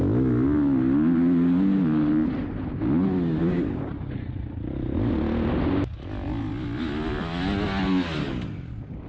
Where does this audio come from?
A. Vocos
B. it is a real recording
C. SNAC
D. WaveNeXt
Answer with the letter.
B